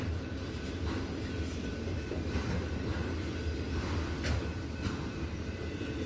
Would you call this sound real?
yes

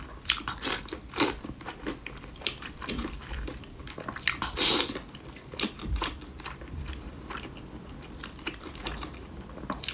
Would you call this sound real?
no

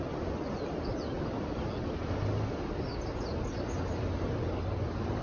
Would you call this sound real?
yes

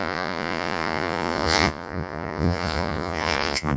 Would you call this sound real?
no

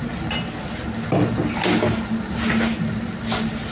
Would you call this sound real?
yes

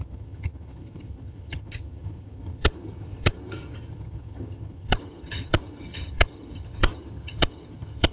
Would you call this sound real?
no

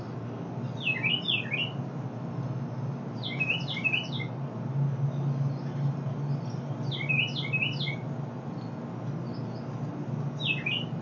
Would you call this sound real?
yes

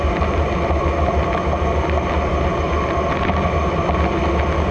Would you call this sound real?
yes